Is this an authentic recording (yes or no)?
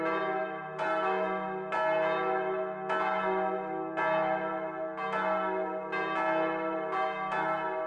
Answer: yes